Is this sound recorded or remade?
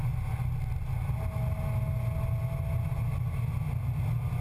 recorded